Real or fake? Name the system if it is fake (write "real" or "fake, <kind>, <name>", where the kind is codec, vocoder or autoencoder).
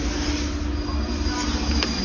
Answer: real